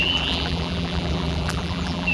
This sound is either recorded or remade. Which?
remade